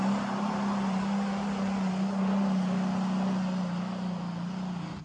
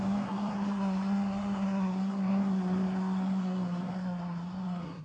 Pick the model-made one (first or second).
second